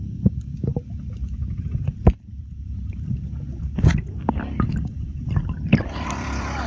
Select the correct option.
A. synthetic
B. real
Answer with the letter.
A